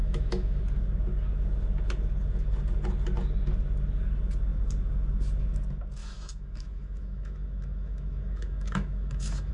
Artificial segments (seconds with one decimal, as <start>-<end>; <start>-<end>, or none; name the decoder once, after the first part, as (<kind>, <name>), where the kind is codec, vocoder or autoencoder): 0.0-0.6 (autoencoder, DAC-VAE); 6.0-9.5